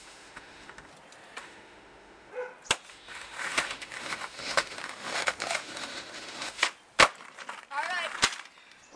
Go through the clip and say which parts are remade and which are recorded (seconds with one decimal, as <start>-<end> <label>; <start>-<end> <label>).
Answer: 0.0-0.9 remade; 0.9-1.4 recorded; 1.4-2.3 remade; 2.3-2.9 recorded; 2.9-6.6 remade; 6.6-9.0 recorded